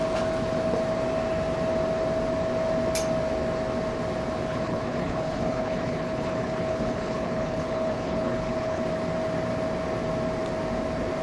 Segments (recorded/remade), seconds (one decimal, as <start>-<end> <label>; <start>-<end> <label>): 0.0-4.5 recorded; 4.5-8.8 remade; 8.8-11.2 recorded